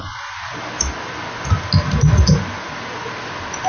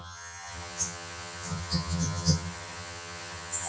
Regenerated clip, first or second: second